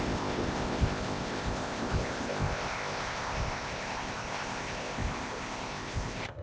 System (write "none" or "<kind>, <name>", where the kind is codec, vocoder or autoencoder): codec, ZipCodec